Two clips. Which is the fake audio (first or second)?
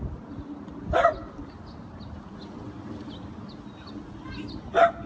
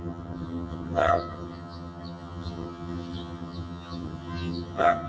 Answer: second